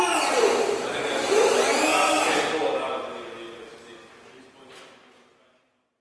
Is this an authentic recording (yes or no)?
yes